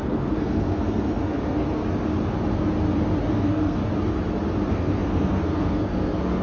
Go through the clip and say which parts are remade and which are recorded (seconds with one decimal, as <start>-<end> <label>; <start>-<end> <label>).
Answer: 0.0-1.8 remade; 1.8-3.3 recorded; 3.3-3.8 remade; 3.8-4.7 recorded; 4.7-6.4 remade